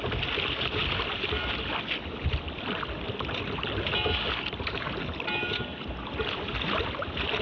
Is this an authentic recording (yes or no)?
yes